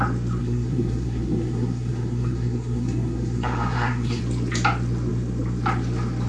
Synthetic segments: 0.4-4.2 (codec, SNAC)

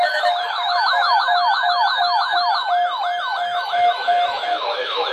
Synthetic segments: 0.0-2.6 (autoencoder, DAC-VAE); 3.2-5.1

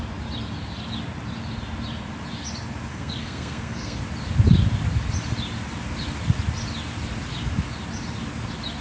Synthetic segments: 2.9-4.0 (codec, SNAC)

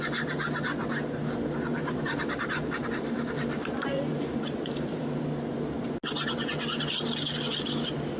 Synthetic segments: 1.7-5.2 (vocoder, BigVGAN v2)

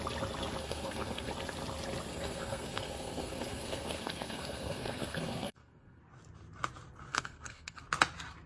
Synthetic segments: 0.6-1.3 (codec, SNAC); 2.1-6.0; 7.1-7.8

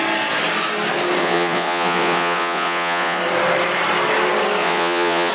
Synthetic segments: 1.2-3.2 (vocoder, Vocos); 4.6-5.3

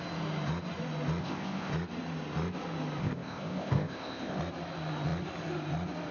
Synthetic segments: 1.2-1.7 (codec, ZipCodec); 3.0-4.4